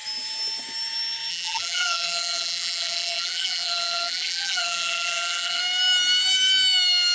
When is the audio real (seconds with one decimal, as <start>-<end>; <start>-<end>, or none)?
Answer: 0.0-1.3; 5.6-7.1